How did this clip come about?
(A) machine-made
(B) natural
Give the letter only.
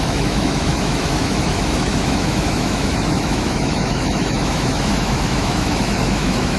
A